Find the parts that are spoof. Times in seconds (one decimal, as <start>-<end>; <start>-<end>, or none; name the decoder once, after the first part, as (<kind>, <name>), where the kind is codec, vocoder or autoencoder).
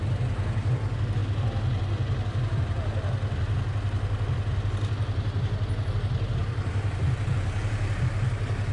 6.4-7.7 (vocoder, BigVGAN v2)